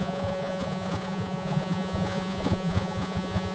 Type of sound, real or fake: fake